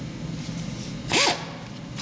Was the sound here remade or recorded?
recorded